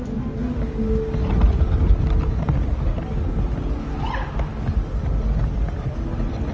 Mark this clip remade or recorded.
recorded